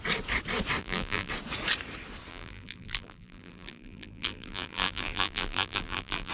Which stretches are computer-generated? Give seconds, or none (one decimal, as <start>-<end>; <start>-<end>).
0.8-1.3; 2.3-6.3